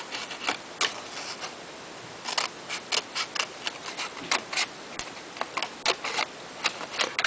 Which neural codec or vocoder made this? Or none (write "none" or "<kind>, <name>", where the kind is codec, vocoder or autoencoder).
none